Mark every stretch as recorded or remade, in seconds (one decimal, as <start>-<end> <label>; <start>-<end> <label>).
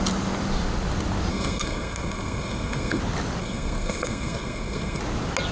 0.0-1.3 recorded; 1.3-3.0 remade; 3.0-3.4 recorded; 3.4-5.0 remade; 5.0-5.5 recorded